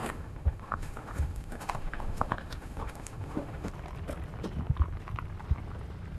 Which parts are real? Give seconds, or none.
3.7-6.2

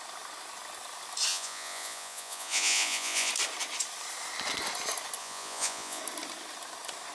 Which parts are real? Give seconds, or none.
0.0-1.3; 3.3-5.2; 6.0-7.1

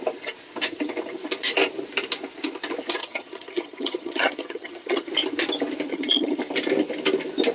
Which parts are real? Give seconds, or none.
0.0-3.0; 5.1-5.9; 6.4-7.5

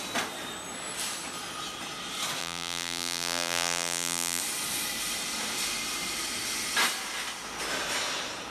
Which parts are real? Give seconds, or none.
0.0-2.4; 4.4-8.5

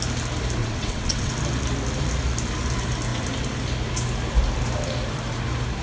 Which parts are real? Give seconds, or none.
0.0-0.6; 1.3-5.8

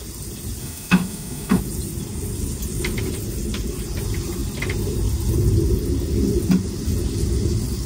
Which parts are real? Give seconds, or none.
0.0-0.6; 1.6-7.9

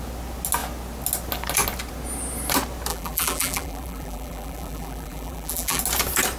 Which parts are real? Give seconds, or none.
0.0-2.9; 5.8-6.4